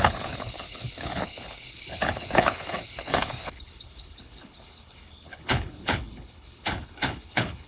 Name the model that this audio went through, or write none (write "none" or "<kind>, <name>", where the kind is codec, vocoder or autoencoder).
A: codec, HILCodec